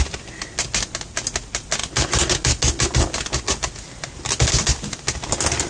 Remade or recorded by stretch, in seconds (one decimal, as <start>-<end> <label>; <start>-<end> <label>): 0.0-5.7 recorded